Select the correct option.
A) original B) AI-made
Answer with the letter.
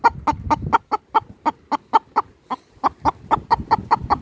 A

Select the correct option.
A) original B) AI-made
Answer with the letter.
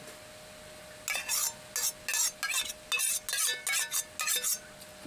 A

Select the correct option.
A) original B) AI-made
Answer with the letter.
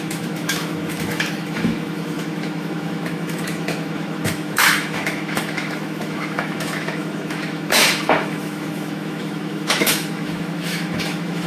B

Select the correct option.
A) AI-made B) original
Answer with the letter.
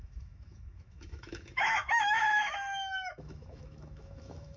A